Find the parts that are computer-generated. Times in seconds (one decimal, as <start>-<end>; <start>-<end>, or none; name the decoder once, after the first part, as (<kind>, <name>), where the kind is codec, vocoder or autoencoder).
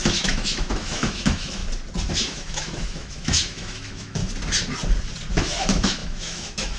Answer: 0.0-1.6 (autoencoder, DAC-VAE); 2.1-4.2; 5.3-6.8